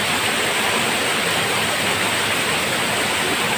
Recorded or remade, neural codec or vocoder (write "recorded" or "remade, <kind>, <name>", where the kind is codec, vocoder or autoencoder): recorded